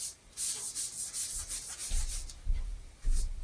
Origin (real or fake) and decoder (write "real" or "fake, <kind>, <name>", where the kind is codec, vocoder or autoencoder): real